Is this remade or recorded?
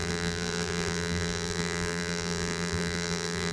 remade